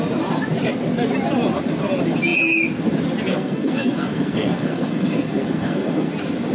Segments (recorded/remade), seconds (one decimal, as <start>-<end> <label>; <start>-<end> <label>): 0.0-3.3 recorded; 3.3-6.1 remade; 6.1-6.5 recorded